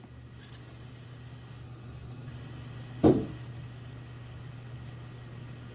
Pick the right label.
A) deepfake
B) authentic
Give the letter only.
B